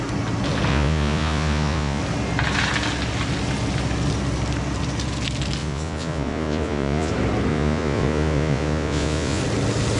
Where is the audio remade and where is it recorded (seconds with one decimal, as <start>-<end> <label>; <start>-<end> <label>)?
0.0-0.7 recorded; 0.7-2.0 remade; 2.0-5.6 recorded; 5.6-7.1 remade; 7.1-7.5 recorded; 7.5-9.4 remade; 9.4-10.0 recorded